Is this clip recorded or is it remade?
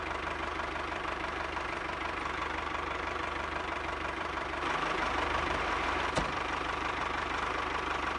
remade